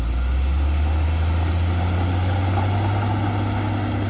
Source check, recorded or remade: recorded